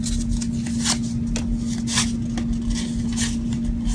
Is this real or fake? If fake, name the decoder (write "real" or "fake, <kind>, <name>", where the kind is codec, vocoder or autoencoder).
real